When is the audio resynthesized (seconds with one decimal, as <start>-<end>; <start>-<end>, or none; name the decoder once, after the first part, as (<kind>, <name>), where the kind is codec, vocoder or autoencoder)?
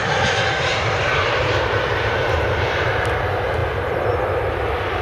0.7-2.9 (vocoder, BigVGAN v2)